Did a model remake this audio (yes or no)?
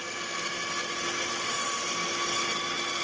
no